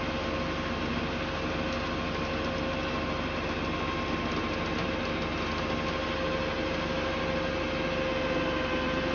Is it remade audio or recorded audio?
recorded